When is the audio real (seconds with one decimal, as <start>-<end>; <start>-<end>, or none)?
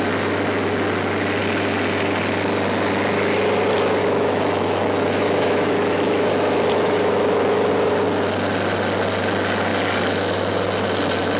0.0-4.0; 7.7-11.4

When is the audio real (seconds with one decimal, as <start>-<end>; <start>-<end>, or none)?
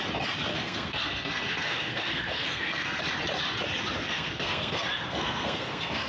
0.0-0.5; 3.0-4.0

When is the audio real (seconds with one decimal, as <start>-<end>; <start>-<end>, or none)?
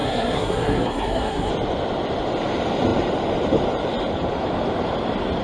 1.5-5.4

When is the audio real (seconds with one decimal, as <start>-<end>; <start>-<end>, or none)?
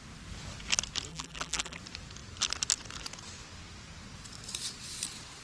0.0-1.1; 1.8-5.4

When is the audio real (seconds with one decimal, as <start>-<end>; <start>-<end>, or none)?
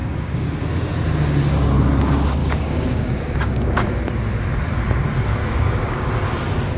0.5-2.4; 3.9-5.4; 6.1-6.8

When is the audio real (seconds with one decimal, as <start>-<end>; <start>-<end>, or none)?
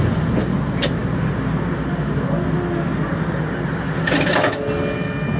0.0-5.4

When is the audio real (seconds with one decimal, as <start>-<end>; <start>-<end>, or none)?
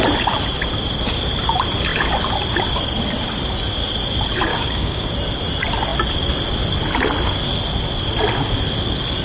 0.0-4.5; 5.1-9.2